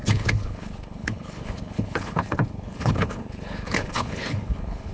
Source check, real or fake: fake